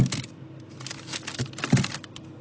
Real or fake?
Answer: real